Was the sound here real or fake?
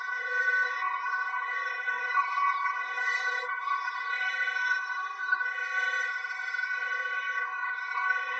fake